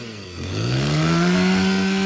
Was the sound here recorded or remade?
remade